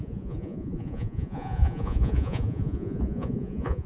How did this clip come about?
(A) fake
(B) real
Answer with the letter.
A